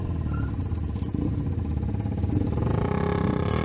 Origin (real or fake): real